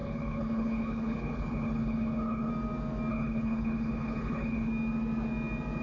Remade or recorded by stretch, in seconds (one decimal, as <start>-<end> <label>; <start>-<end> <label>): 0.0-2.5 remade; 2.5-3.1 recorded; 3.1-4.7 remade; 4.7-5.8 recorded